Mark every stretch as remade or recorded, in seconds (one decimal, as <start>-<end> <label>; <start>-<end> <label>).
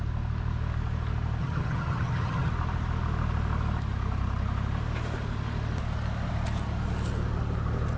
0.0-1.4 recorded; 1.4-2.5 remade; 2.5-8.0 recorded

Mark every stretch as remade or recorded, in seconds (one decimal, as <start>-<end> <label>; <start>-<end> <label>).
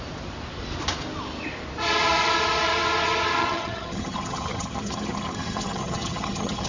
0.0-3.4 recorded; 3.4-6.7 remade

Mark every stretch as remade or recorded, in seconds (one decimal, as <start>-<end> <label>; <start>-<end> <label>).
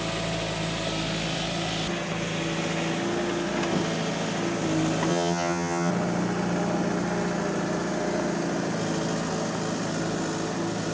0.0-5.1 recorded; 5.1-5.9 remade; 5.9-10.9 recorded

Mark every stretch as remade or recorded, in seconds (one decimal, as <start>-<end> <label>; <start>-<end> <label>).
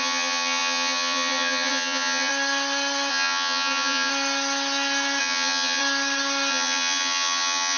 0.0-2.3 remade; 2.3-3.1 recorded; 3.1-4.1 remade; 4.1-5.2 recorded; 5.2-5.8 remade; 5.8-6.5 recorded; 6.5-7.8 remade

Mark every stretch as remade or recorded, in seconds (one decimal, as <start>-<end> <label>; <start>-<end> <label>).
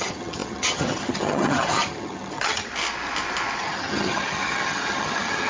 0.0-2.7 remade; 2.7-3.6 recorded; 3.6-5.5 remade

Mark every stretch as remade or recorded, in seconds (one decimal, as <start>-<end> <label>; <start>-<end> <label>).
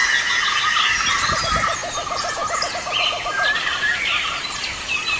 0.0-5.2 recorded